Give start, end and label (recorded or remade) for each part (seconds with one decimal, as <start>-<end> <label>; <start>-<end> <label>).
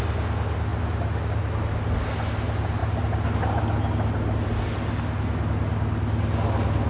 0.0-6.9 recorded